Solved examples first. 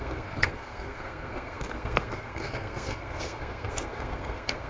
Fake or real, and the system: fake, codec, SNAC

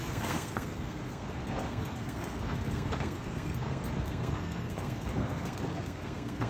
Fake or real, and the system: fake, codec, SNAC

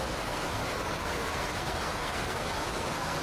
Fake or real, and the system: fake, codec, SNAC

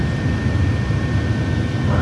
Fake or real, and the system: real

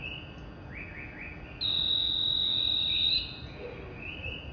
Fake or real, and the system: real